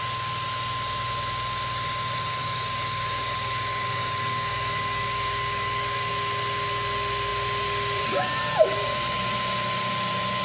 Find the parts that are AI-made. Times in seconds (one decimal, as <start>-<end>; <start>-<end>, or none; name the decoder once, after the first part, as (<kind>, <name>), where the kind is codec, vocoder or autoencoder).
2.4-6.1 (codec, DAC)